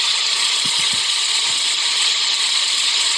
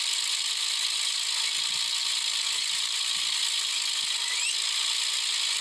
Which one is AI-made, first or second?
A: first